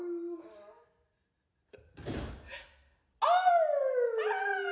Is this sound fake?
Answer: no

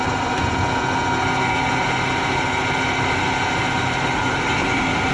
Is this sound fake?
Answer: no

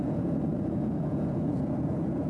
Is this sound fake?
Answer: yes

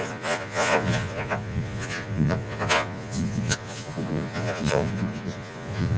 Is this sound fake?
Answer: yes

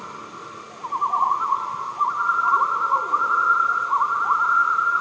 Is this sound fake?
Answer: no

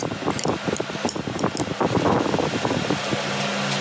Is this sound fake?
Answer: no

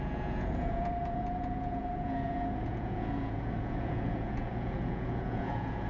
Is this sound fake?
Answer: yes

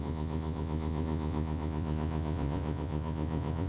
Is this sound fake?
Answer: yes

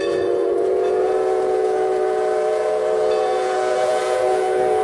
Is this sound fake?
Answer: yes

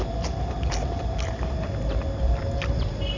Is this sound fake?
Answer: no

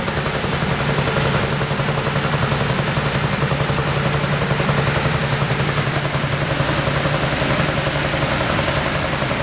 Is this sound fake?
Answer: no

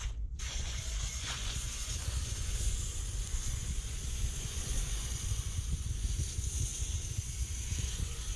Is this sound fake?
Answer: yes